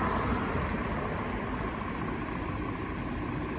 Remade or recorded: recorded